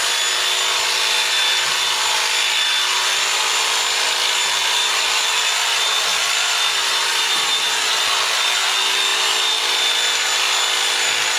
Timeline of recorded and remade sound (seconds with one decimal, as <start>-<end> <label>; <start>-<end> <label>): 0.0-4.6 recorded; 4.6-7.2 remade; 7.2-11.4 recorded